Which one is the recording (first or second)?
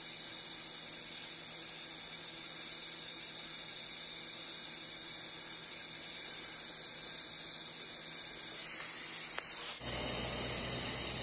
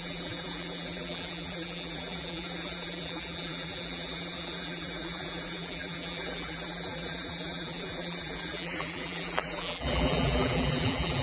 first